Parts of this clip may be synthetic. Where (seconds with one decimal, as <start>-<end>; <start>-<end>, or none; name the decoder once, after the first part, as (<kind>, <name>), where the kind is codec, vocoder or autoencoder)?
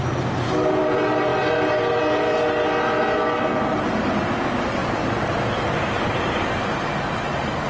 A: none